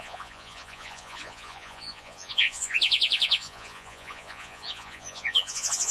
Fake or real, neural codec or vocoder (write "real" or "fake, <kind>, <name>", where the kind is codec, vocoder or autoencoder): fake, vocoder, Vocos